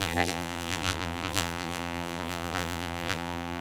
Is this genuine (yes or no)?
no